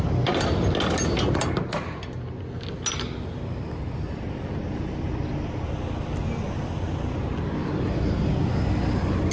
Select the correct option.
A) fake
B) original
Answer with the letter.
B